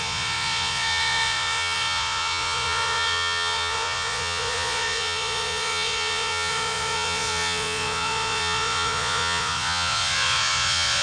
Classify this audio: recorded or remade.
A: remade